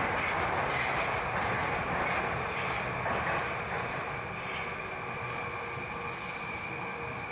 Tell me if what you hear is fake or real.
real